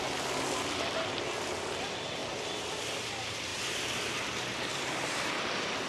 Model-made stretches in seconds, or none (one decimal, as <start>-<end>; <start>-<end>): 2.2-3.1; 3.5-5.3